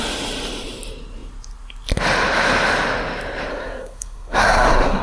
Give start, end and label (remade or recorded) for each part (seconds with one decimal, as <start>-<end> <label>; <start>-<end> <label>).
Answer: 0.0-3.5 recorded; 3.5-5.0 remade